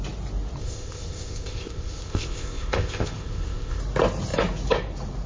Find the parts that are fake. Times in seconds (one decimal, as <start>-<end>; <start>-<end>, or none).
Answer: 0.6-3.8

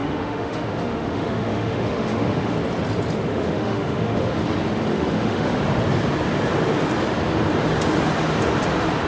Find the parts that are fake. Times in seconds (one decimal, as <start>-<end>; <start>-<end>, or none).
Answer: 0.0-2.5; 3.3-4.4; 4.9-5.6

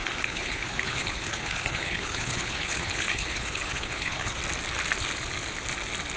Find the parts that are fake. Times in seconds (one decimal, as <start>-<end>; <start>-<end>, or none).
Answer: 0.0-4.4

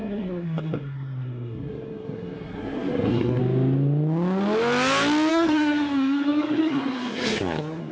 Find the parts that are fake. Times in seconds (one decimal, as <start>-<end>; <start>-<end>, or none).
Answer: 0.0-3.4; 5.3-7.9

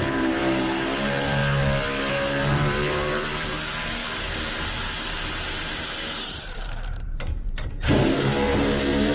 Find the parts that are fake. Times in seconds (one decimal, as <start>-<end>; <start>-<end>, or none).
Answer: 0.0-1.4; 2.1-9.1